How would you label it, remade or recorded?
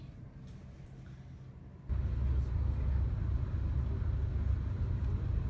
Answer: recorded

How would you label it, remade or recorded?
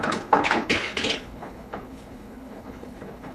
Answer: remade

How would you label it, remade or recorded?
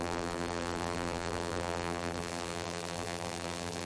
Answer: remade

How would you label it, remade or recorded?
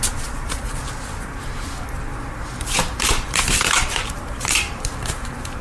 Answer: remade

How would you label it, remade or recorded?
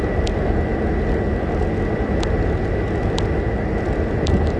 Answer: recorded